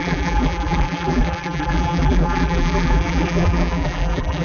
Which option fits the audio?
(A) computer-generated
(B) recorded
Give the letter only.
A